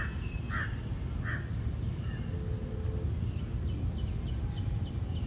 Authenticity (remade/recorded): recorded